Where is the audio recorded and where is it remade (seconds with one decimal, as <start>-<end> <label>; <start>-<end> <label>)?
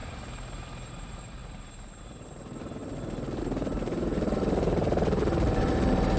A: 0.0-0.9 recorded; 0.9-2.8 remade; 2.8-3.4 recorded; 3.4-6.2 remade